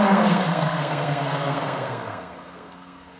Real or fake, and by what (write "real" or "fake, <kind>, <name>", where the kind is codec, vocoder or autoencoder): fake, codec, SNAC